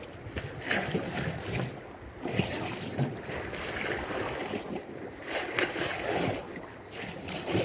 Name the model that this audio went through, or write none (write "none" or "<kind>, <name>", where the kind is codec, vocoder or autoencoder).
none